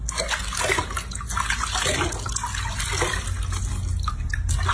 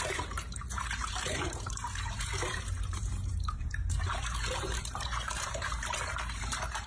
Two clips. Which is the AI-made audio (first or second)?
second